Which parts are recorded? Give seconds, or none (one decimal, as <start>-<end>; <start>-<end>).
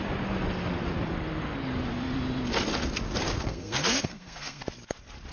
0.0-3.3; 4.6-5.3